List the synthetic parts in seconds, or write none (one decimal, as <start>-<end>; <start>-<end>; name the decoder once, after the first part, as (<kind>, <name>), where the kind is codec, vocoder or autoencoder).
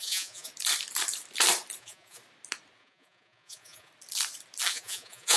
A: 0.0-0.5 (vocoder, Vocos); 1.8-2.2; 2.8-3.9; 4.7-5.4